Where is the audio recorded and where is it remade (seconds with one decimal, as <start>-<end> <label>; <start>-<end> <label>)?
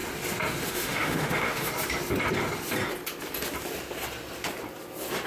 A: 0.0-0.7 recorded; 0.7-1.7 remade; 1.7-5.3 recorded